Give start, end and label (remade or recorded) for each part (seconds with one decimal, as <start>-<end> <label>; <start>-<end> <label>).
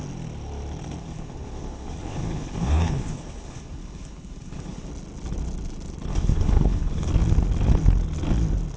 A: 0.0-1.0 recorded; 1.0-4.9 remade; 4.9-6.1 recorded; 6.1-7.1 remade; 7.1-8.8 recorded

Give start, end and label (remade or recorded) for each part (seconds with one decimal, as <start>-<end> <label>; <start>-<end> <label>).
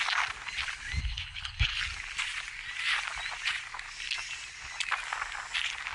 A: 0.0-1.0 recorded; 1.0-1.8 remade; 1.8-5.9 recorded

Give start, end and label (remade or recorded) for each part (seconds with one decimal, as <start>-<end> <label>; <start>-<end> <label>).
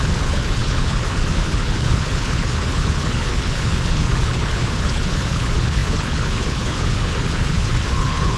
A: 0.0-8.4 remade